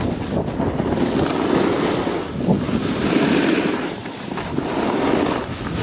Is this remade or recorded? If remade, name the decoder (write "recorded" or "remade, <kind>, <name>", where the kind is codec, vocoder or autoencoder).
recorded